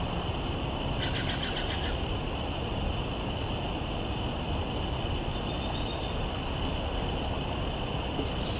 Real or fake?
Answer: real